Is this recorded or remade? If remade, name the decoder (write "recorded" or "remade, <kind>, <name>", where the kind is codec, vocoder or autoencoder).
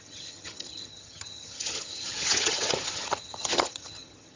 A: remade, vocoder, HiFi-GAN